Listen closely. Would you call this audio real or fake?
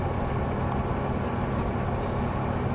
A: real